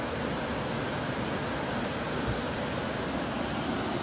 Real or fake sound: real